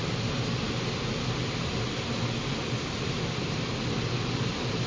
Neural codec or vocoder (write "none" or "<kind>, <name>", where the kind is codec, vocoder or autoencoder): none